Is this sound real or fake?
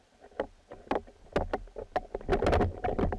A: real